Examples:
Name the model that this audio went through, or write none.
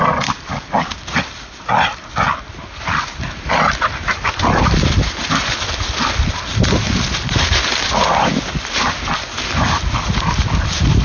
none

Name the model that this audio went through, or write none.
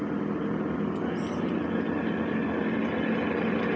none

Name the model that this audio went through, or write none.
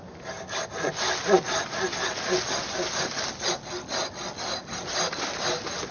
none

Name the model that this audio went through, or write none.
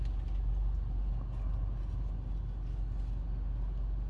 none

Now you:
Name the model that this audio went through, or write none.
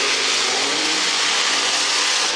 vocoder, Vocos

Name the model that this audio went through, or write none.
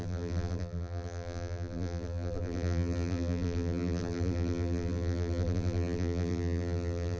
vocoder, BigVGAN v2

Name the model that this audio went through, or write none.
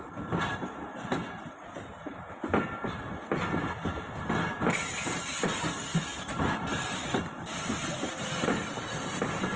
none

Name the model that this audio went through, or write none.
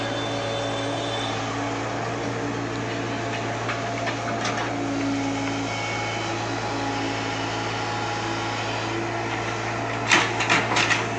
none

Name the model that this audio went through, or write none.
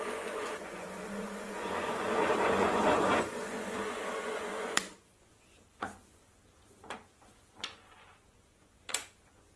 vocoder, Vocos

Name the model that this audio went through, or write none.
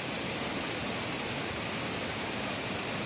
none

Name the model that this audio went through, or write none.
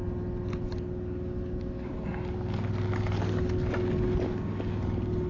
none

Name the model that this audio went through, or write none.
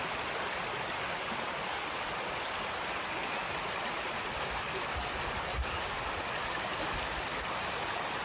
none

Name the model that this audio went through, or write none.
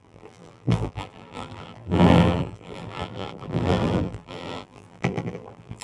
vocoder, BigVGAN v2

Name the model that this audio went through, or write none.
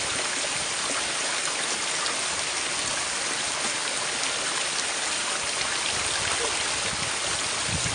none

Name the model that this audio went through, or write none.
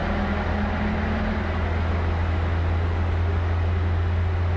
none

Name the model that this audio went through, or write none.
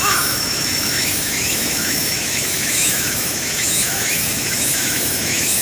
autoencoder, DAC-VAE